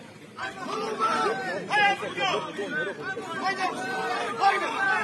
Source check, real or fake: fake